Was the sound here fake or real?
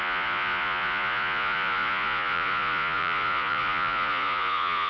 fake